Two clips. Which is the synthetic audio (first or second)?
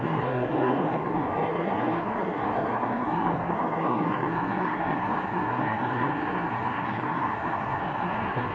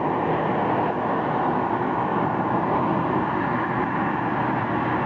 first